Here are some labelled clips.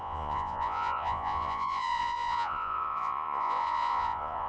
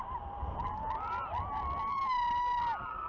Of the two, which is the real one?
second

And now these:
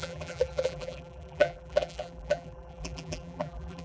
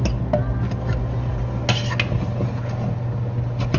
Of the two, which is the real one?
second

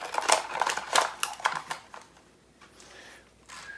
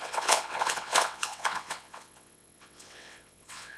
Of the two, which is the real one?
first